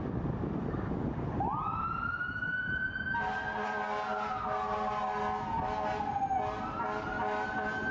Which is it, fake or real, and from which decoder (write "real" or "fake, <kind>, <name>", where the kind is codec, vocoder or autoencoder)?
real